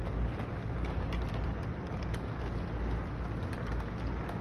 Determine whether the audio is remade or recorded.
recorded